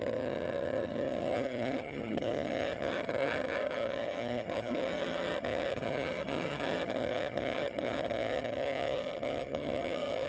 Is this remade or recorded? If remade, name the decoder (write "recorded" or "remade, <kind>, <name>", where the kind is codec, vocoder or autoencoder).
remade, vocoder, HiFi-GAN